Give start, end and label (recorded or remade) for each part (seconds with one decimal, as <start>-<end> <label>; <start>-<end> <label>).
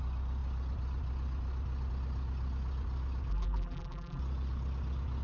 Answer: 0.0-3.3 recorded; 3.3-4.2 remade; 4.2-5.2 recorded